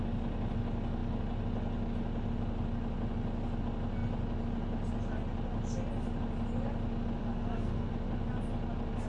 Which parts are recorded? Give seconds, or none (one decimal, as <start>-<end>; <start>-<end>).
0.0-7.2; 7.9-9.1